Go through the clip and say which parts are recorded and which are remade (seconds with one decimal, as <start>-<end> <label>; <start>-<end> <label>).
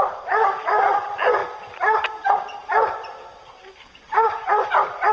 0.0-5.1 recorded